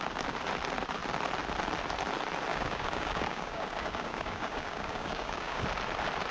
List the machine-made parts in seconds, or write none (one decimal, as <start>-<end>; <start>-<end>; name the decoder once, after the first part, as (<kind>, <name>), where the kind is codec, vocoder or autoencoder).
2.5-5.6 (codec, DAC)